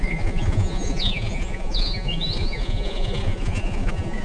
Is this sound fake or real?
fake